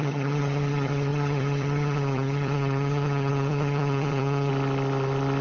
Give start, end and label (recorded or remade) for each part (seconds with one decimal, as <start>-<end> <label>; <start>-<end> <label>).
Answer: 0.0-4.5 remade; 4.5-5.4 recorded